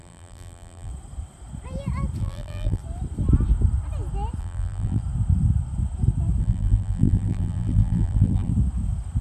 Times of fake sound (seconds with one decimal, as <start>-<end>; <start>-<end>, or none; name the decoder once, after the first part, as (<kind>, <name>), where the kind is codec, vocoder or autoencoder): 0.0-0.9 (vocoder, BigVGAN v2); 2.2-2.8; 4.4-5.0; 6.4-8.5